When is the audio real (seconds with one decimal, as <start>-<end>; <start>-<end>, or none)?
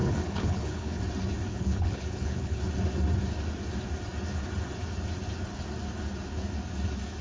1.0-1.5; 2.6-7.2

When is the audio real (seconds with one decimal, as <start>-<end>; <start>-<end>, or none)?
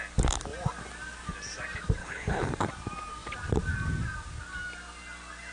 0.0-2.0; 2.5-5.5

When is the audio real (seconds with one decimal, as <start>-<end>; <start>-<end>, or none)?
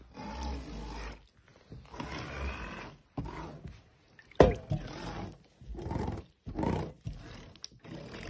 0.0-8.3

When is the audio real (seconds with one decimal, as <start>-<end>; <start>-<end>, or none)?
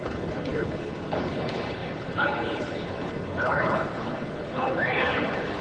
none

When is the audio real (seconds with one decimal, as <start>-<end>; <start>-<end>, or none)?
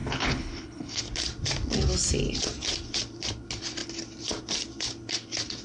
1.0-5.6